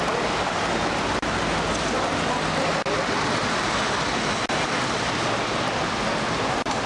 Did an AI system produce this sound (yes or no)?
no